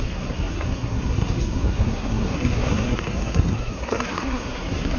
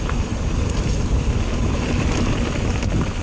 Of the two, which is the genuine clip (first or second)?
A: second